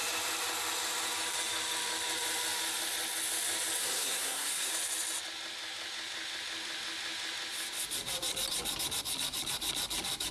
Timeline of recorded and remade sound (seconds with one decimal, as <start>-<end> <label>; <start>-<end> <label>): 0.0-3.8 recorded; 3.8-4.7 remade; 4.7-10.3 recorded